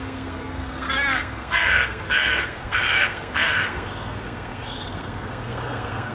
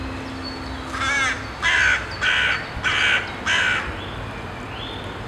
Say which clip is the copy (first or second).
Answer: first